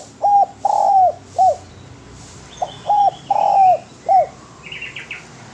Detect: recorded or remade remade